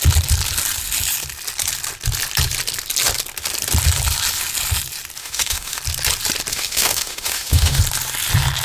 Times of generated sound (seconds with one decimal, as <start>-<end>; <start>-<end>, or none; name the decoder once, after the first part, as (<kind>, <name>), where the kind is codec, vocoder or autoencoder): 5.2-5.8 (autoencoder, DAC-VAE); 6.5-7.8